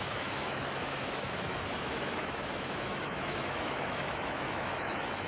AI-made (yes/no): yes